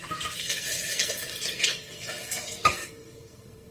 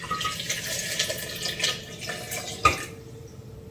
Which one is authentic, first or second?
second